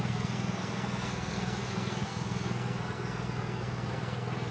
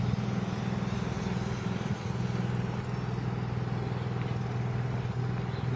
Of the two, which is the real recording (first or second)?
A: second